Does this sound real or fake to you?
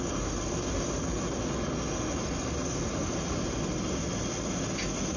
real